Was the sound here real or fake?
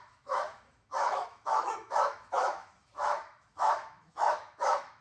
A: fake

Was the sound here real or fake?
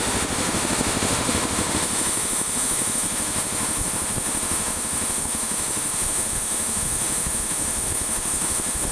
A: fake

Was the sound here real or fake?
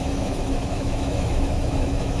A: fake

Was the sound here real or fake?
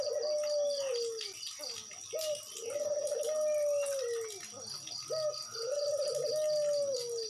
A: real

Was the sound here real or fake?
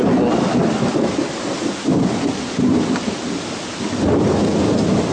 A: real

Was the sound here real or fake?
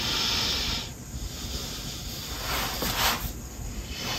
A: real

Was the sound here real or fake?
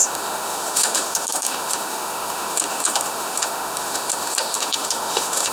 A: fake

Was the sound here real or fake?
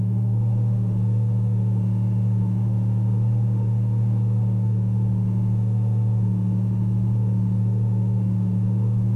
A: fake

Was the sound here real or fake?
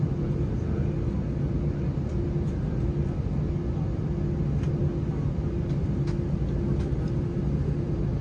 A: real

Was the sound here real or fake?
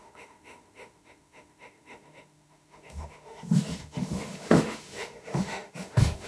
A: fake